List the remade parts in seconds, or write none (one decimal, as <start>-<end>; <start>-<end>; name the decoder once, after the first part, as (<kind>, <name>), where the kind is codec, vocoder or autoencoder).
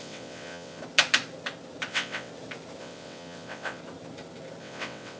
0.0-0.8 (vocoder, WaveNeXt); 1.9-2.3; 2.8-3.8; 4.6-5.2